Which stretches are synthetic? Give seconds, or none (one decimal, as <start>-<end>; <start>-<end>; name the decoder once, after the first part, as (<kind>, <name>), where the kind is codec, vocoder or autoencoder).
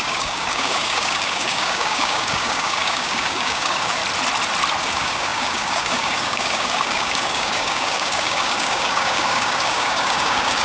0.0-4.0 (codec, DAC); 4.8-10.6